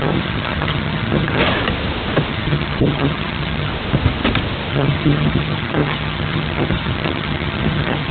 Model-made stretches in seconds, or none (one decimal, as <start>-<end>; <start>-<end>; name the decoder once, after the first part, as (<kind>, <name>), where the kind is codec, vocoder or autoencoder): 0.0-1.4 (vocoder, HiFi-GAN); 2.3-3.7; 4.7-8.1